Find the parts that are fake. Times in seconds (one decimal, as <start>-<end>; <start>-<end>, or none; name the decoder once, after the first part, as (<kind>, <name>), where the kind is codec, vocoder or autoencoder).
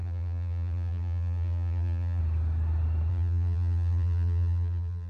0.0-2.2 (vocoder, BigVGAN v2); 3.1-5.1